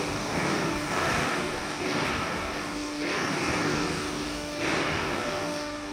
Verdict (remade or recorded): remade